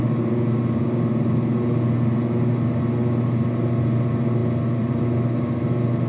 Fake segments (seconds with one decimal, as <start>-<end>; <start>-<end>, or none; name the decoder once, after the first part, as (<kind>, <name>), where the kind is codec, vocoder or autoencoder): none